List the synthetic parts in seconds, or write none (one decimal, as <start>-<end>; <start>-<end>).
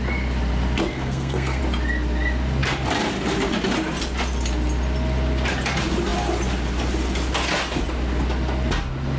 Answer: 0.9-1.6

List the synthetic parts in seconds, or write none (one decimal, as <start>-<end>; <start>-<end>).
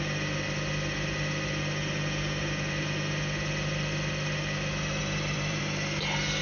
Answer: 5.0-5.6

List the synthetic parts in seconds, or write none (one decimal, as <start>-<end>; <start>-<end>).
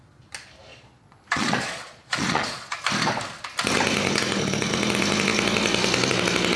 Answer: 0.7-2.8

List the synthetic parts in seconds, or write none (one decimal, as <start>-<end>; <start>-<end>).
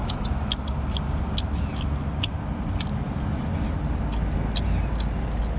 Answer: 0.0-0.5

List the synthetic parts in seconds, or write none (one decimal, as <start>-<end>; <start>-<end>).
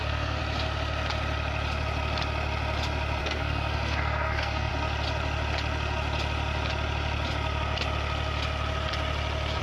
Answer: 0.0-0.4; 3.2-4.7